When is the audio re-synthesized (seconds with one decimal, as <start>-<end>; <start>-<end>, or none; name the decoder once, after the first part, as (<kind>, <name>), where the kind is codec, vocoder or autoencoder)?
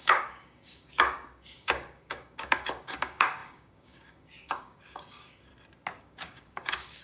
0.0-5.5 (codec, DAC); 6.0-7.0